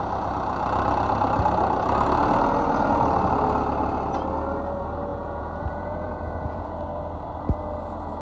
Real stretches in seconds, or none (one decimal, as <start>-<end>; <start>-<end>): 0.0-5.1; 6.7-8.2

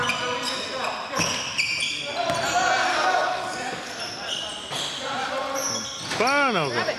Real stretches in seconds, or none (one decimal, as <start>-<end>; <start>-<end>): 0.0-2.9; 4.0-7.0

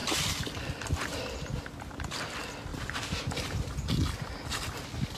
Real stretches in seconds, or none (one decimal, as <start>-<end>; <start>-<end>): 0.0-2.7; 3.9-5.2

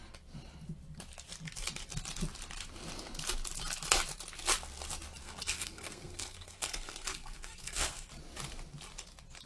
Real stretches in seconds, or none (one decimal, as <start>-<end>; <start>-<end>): 0.0-5.2; 8.1-9.5

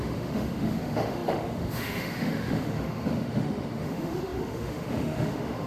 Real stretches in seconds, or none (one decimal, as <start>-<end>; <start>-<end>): none

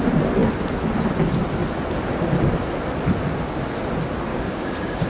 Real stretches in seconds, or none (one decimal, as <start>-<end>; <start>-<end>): 0.0-4.3

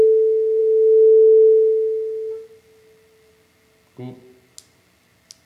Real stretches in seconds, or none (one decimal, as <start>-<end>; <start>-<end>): 0.0-5.5